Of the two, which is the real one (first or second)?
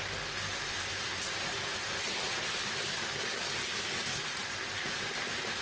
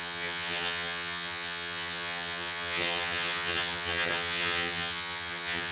first